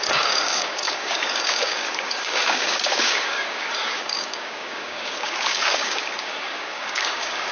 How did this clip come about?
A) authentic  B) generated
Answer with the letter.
B